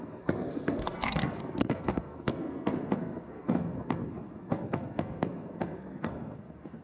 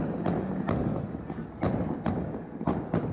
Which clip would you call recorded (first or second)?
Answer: second